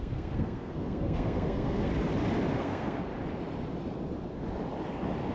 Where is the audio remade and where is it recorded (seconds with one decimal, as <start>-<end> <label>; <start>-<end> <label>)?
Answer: 0.0-1.9 remade; 1.9-2.6 recorded; 2.6-3.1 remade; 3.1-5.3 recorded